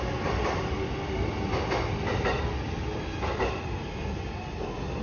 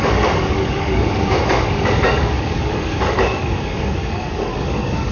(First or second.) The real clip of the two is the first